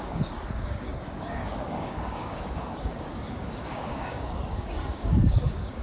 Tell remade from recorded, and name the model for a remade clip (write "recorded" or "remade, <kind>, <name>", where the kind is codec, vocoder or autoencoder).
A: remade, codec, DAC